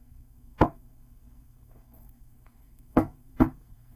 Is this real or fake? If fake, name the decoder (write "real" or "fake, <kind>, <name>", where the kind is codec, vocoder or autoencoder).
fake, codec, SNAC